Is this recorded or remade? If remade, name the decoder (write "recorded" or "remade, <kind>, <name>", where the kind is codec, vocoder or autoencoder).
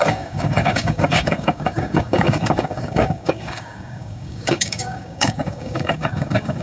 remade, codec, DAC